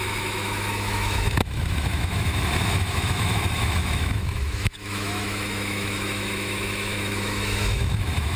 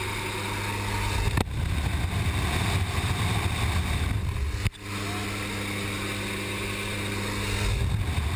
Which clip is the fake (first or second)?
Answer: first